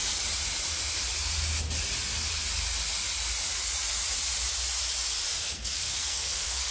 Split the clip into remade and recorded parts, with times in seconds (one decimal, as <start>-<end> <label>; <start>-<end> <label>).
0.0-5.3 recorded; 5.3-6.7 remade

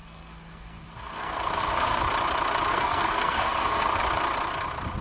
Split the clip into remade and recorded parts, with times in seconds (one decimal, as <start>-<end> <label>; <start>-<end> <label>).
0.0-2.0 remade; 2.0-2.7 recorded; 2.7-4.0 remade; 4.0-5.0 recorded

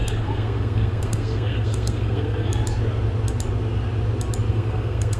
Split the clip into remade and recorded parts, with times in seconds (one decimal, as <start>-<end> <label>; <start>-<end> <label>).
0.0-2.6 remade; 2.6-4.5 recorded; 4.5-5.2 remade

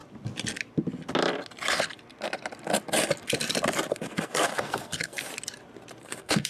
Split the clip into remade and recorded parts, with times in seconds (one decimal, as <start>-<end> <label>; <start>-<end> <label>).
0.0-3.9 recorded; 3.9-5.3 remade; 5.3-6.0 recorded; 6.0-6.5 remade

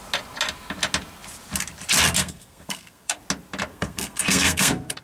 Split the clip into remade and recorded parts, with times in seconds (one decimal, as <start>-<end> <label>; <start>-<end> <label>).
0.0-2.2 recorded; 2.2-3.2 remade; 3.2-3.7 recorded; 3.7-5.0 remade

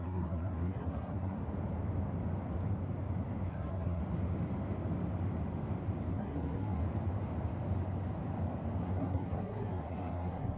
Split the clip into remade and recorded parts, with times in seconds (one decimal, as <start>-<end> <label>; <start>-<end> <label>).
0.0-1.4 remade; 1.4-3.5 recorded; 3.5-4.0 remade; 4.0-6.1 recorded; 6.1-6.8 remade; 6.8-8.8 recorded; 8.8-10.6 remade

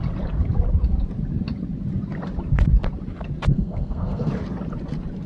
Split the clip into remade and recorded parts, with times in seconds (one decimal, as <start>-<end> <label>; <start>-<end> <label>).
0.0-3.5 recorded; 3.5-4.3 remade; 4.3-5.3 recorded

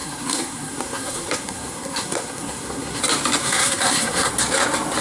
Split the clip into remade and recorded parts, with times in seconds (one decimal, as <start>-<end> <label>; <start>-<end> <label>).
0.0-3.0 remade; 3.0-3.4 recorded; 3.4-4.3 remade; 4.3-5.0 recorded